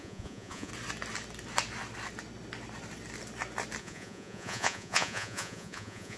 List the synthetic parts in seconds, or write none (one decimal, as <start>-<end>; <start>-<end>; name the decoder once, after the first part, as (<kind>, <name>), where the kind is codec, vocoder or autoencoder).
0.0-0.7 (vocoder, Vocos); 3.8-6.2